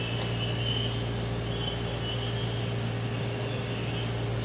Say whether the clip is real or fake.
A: real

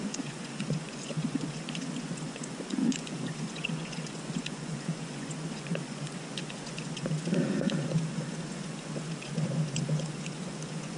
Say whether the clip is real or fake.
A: fake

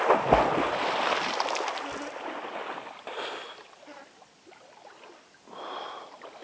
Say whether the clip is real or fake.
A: real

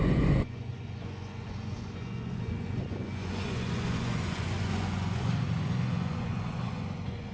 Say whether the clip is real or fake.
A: fake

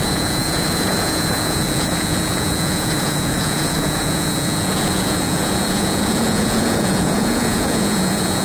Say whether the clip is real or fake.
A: fake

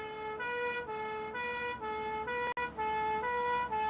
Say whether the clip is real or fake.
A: real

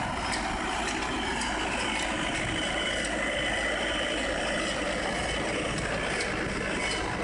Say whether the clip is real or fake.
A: real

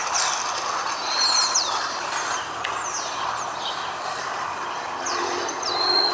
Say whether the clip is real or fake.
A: real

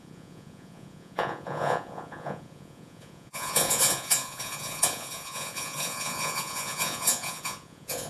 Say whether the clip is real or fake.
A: fake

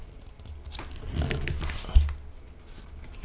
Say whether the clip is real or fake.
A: real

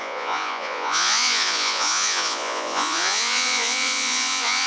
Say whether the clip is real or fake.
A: fake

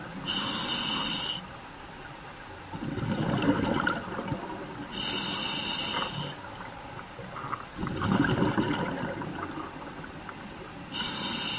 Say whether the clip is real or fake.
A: real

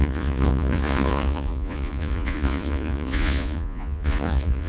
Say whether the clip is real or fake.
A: fake